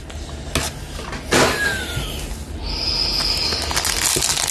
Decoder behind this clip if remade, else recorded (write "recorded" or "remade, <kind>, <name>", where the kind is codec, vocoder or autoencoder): recorded